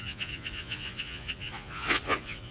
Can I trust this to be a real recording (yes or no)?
no